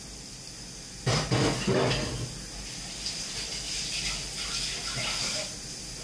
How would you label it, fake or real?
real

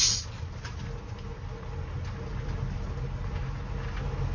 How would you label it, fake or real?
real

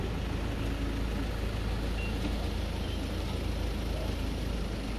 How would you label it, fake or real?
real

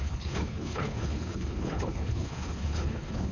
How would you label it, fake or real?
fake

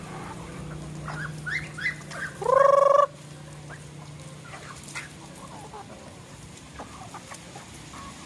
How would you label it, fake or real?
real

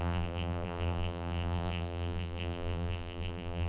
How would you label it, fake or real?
fake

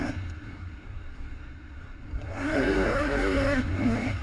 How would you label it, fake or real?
fake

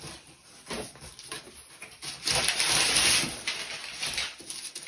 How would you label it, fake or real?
real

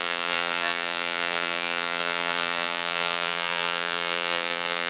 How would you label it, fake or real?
fake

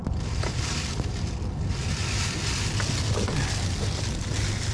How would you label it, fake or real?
real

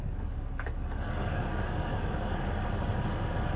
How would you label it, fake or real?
fake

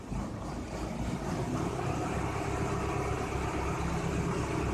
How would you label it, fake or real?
real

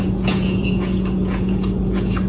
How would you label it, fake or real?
fake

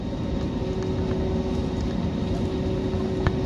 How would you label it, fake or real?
real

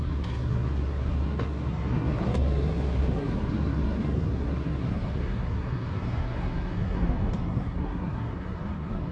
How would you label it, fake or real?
fake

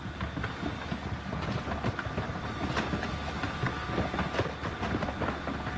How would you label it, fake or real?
real